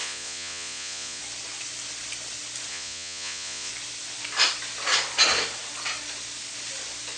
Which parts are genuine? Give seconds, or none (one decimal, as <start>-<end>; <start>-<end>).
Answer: 1.2-2.7; 3.7-7.2